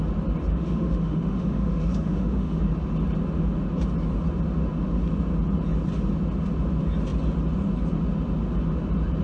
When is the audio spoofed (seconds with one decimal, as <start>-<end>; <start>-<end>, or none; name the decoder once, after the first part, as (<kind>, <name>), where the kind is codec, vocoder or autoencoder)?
0.5-2.6 (autoencoder, DAC-VAE)